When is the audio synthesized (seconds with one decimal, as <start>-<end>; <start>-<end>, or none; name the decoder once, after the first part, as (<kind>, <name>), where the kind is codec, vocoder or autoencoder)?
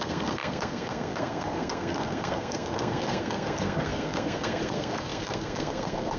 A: 0.0-6.2 (codec, SNAC)